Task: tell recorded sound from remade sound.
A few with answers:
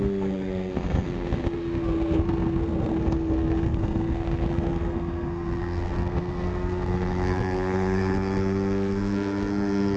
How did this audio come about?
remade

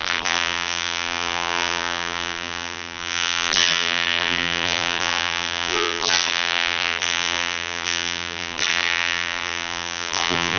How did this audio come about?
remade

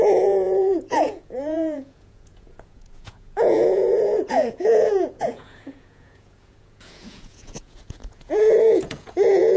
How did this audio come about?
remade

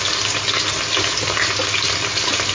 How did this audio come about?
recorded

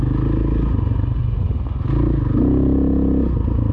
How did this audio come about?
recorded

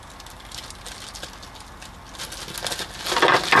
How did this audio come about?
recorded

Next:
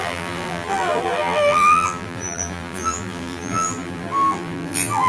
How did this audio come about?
remade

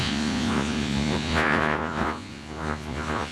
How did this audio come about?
remade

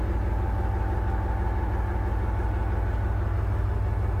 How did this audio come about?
recorded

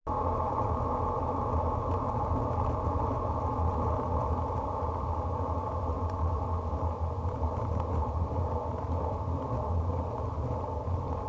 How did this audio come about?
recorded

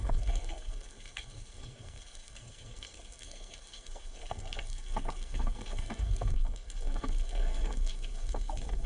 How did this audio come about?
remade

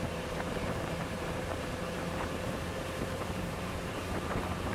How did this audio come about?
remade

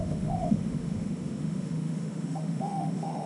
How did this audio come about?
remade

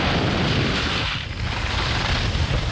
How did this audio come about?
recorded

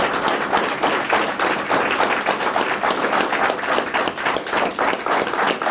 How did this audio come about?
recorded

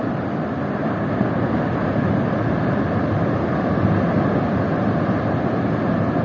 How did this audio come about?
recorded